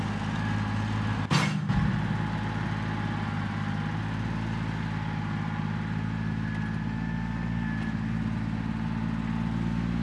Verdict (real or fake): real